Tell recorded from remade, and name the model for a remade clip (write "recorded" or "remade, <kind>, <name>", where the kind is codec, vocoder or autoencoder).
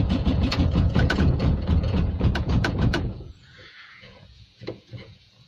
remade, vocoder, Vocos